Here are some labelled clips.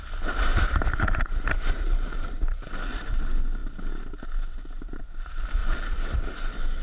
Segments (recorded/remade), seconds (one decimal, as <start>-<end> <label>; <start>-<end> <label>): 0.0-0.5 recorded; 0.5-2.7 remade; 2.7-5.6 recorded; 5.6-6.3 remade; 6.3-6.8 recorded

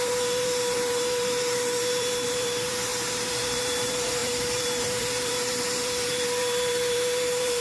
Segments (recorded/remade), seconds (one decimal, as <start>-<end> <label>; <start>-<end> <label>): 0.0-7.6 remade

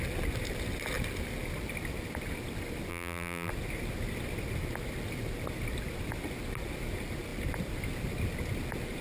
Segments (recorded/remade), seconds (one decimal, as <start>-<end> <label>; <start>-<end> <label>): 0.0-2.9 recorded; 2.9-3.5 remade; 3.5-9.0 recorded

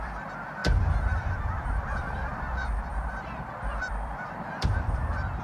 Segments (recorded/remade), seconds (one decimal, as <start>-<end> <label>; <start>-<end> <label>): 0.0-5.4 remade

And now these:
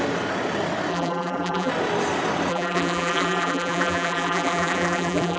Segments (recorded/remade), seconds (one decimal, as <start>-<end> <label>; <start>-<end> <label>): 0.0-0.9 recorded; 0.9-1.7 remade; 1.7-2.5 recorded; 2.5-5.4 remade

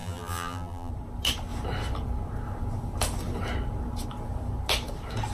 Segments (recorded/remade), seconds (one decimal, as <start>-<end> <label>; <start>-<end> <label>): 0.0-0.9 remade; 0.9-5.3 recorded

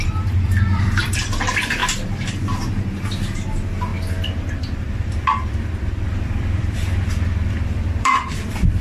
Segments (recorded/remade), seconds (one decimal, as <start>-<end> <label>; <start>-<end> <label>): 0.0-1.8 remade; 1.8-2.3 recorded; 2.3-3.9 remade; 3.9-4.5 recorded; 4.5-8.8 remade